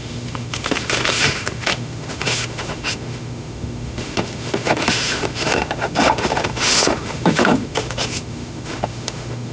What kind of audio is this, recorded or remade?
remade